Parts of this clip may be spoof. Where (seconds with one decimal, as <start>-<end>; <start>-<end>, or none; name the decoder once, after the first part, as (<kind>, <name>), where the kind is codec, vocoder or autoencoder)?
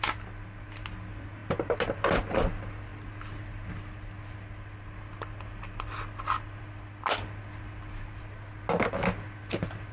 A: none